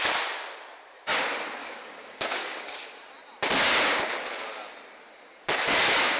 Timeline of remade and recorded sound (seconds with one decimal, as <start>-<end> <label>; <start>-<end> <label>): 0.0-1.6 recorded; 1.6-2.8 remade; 2.8-6.2 recorded